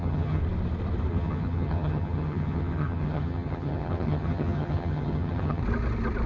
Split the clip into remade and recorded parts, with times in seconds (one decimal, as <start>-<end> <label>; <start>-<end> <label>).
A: 0.0-0.4 remade; 0.4-1.1 recorded; 1.1-5.6 remade; 5.6-6.3 recorded